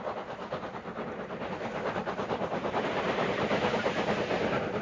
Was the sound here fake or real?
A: real